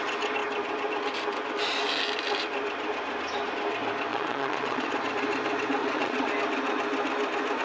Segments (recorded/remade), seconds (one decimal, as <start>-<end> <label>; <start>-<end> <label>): 0.0-4.1 recorded; 4.1-4.9 remade; 4.9-5.8 recorded; 5.8-6.3 remade; 6.3-7.6 recorded